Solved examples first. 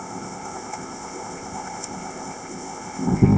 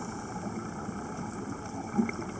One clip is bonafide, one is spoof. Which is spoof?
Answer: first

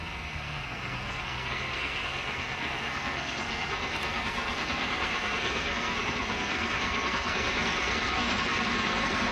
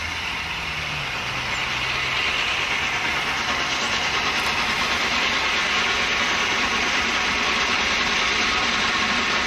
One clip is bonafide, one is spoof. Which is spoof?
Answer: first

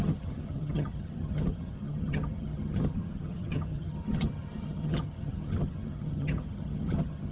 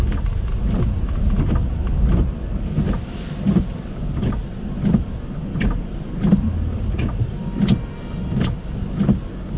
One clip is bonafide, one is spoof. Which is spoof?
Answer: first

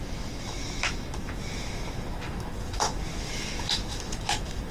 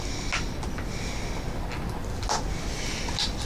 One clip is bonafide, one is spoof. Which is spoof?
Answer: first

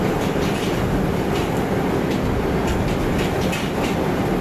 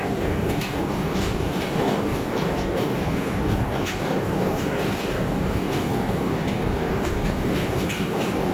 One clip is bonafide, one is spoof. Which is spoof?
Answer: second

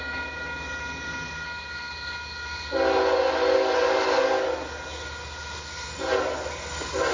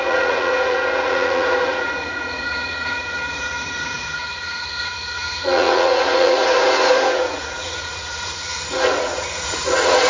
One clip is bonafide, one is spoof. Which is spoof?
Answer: second